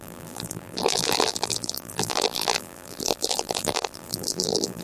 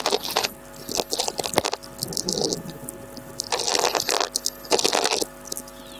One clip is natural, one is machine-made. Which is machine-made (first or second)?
first